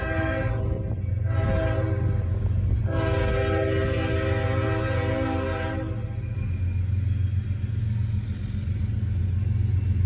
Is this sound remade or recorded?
recorded